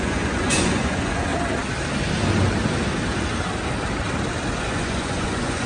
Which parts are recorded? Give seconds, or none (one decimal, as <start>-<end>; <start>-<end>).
1.3-4.6